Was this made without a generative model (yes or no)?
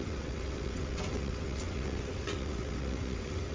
no